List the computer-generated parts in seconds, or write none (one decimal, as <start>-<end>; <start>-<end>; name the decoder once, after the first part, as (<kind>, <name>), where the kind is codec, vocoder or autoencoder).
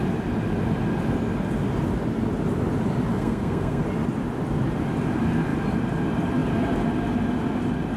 3.1-3.8 (codec, SNAC)